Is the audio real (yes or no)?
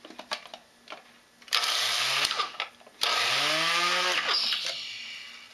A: yes